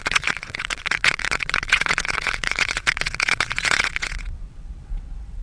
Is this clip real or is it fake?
fake